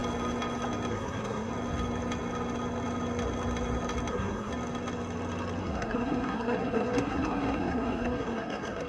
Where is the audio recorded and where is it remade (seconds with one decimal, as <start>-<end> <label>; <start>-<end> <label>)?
0.0-0.9 recorded; 0.9-1.5 remade; 1.5-4.1 recorded; 4.1-4.5 remade; 4.5-5.6 recorded; 5.6-8.9 remade